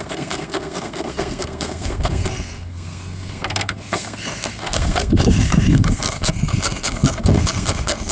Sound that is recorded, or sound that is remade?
remade